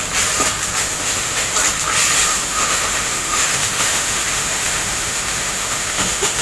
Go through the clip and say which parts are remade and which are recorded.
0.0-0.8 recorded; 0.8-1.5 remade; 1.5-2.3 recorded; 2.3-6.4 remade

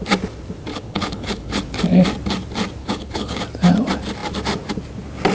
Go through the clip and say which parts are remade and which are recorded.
0.0-0.7 recorded; 0.7-1.6 remade; 1.6-2.8 recorded; 2.8-3.4 remade; 3.4-5.3 recorded

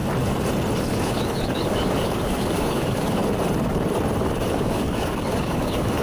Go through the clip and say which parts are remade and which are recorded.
0.0-0.8 recorded; 0.8-3.2 remade; 3.2-4.5 recorded; 4.5-6.0 remade